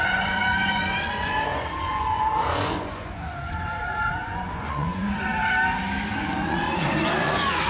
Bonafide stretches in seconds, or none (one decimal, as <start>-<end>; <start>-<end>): 5.3-6.1